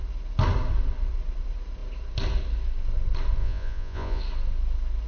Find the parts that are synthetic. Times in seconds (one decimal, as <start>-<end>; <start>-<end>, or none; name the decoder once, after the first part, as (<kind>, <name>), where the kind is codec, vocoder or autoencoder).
3.4-4.2 (vocoder, Vocos)

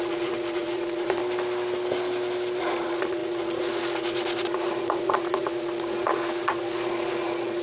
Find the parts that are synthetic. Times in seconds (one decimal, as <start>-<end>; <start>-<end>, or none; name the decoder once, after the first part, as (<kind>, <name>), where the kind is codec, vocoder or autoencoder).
0.0-1.2 (vocoder, Vocos); 2.6-7.6

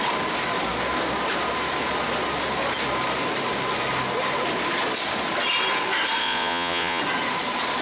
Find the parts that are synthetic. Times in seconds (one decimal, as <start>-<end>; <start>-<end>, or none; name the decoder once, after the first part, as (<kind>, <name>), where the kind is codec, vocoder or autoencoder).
6.2-7.0 (vocoder, Vocos)

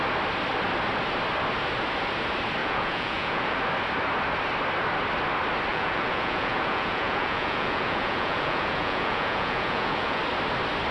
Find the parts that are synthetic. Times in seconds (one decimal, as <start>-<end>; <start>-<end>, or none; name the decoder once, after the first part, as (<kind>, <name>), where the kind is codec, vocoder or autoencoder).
2.6-3.6 (vocoder, Vocos); 5.7-10.2